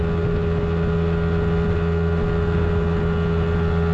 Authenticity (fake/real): real